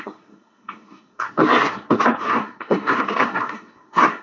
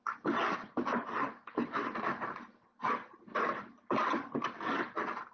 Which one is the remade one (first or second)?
first